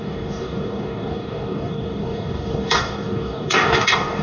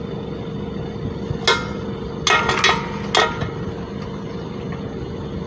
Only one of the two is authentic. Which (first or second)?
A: second